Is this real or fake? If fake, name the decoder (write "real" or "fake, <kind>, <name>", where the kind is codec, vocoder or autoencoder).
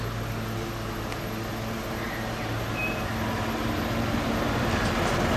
real